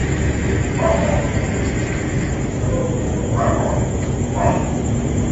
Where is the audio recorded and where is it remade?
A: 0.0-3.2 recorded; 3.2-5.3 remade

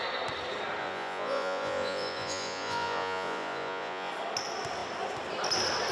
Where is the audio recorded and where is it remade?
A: 0.0-0.8 recorded; 0.8-4.1 remade; 4.1-5.9 recorded

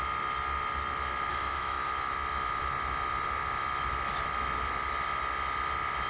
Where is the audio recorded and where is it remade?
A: 0.0-1.3 recorded; 1.3-1.9 remade; 1.9-6.1 recorded

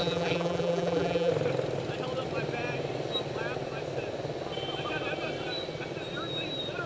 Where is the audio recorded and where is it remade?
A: 0.0-1.3 remade; 1.3-6.9 recorded

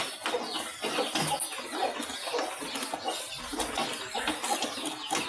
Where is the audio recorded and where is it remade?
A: 0.0-5.3 recorded

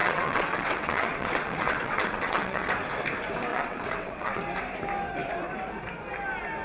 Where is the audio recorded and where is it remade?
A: 0.0-2.7 remade; 2.7-3.5 recorded; 3.5-4.4 remade; 4.4-6.6 recorded

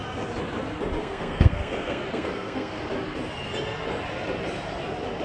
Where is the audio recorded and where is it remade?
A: 0.0-1.0 recorded; 1.0-2.8 remade; 2.8-5.2 recorded